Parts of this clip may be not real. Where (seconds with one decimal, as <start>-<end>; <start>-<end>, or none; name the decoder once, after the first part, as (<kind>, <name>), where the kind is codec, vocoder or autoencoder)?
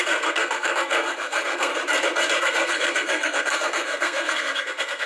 0.0-1.7 (codec, SNAC); 2.4-5.1